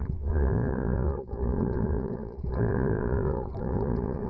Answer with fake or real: fake